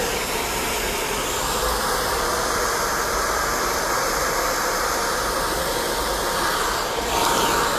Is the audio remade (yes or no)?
yes